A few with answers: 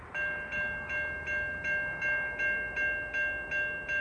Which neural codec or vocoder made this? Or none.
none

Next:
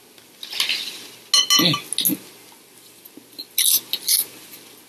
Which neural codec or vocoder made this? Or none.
none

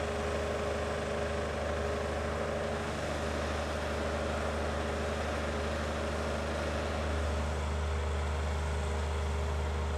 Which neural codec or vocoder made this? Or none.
none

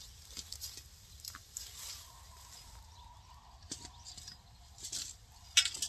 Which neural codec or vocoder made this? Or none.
none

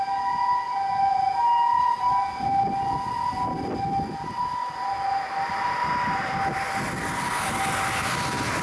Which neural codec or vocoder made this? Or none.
none